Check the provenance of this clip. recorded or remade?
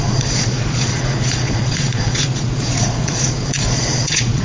remade